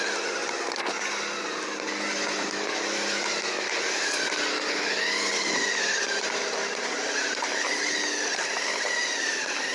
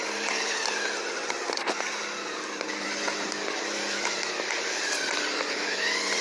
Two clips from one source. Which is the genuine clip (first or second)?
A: first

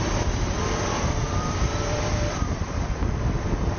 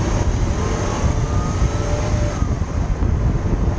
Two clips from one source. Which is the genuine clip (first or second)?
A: second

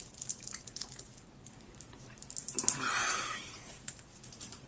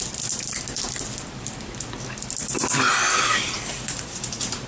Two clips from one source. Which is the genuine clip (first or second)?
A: second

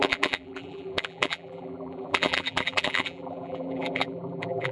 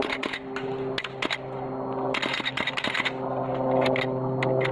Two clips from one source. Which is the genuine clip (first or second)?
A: second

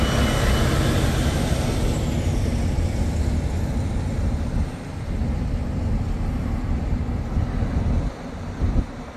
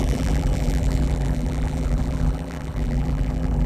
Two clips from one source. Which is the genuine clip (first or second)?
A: first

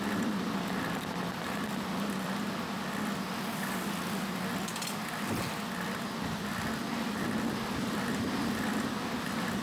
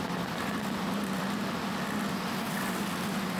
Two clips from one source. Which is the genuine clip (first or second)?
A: second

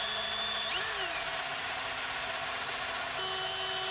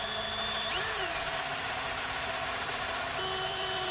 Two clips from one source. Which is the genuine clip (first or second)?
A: first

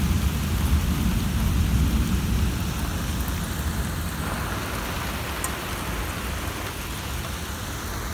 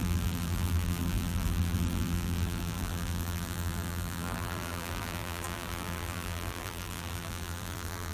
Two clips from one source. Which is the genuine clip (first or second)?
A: first